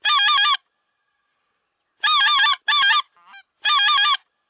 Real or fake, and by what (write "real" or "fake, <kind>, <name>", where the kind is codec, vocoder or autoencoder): real